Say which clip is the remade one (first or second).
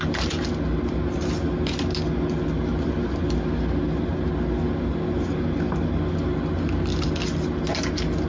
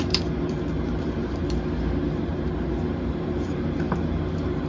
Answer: second